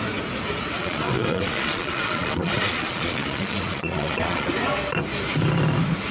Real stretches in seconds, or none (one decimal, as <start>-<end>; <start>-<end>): 0.0-0.8; 4.5-6.1